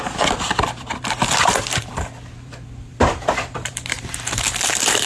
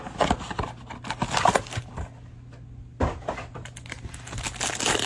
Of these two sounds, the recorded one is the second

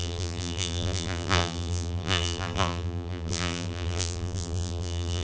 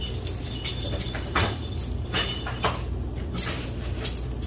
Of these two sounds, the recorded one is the second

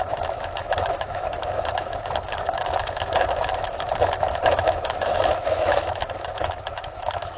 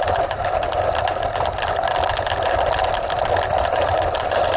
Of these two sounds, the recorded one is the second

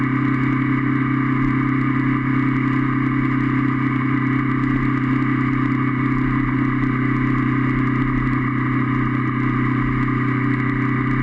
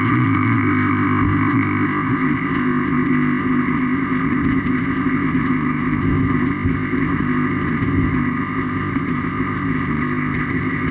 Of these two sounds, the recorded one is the first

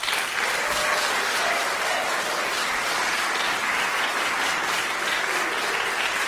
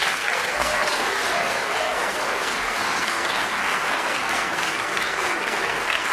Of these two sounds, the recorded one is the first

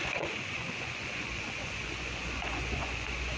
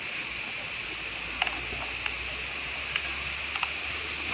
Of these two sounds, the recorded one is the second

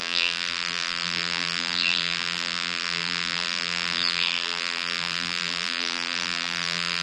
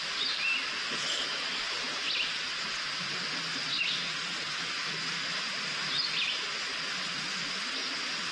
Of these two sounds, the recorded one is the second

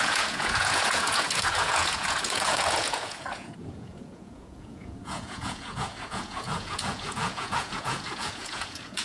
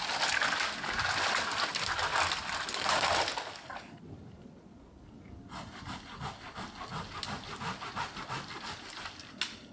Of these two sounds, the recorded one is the second